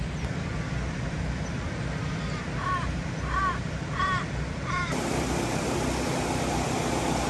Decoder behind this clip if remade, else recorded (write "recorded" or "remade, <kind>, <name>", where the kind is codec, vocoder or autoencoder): remade, vocoder, BigVGAN v2